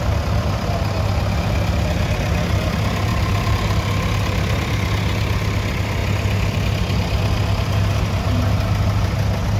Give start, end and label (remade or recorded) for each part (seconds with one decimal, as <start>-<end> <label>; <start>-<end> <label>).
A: 0.0-3.1 recorded; 3.1-3.8 remade; 3.8-9.6 recorded